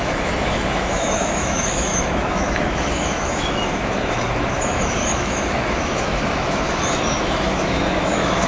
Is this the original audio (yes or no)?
no